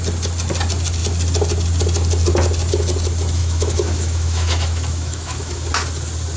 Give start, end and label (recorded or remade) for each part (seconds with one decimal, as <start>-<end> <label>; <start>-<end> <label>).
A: 0.0-3.4 recorded; 3.4-5.7 remade; 5.7-6.4 recorded